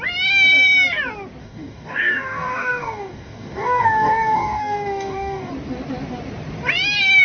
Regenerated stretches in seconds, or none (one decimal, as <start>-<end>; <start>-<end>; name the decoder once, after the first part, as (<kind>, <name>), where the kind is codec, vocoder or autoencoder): 1.4-5.5 (codec, DAC)